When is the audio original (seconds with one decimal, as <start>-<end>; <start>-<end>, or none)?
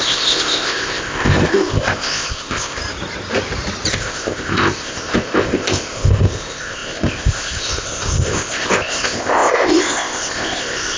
2.8-3.9